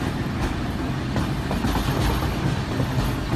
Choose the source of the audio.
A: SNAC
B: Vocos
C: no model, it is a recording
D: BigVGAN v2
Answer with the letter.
C